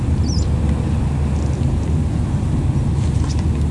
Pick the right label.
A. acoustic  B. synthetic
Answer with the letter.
A